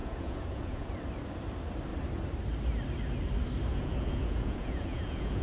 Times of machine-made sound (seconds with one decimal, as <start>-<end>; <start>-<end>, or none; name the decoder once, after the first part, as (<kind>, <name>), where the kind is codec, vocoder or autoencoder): 0.0-0.9 (vocoder, Vocos); 3.7-5.4